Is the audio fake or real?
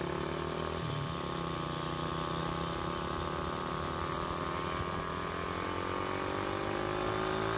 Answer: real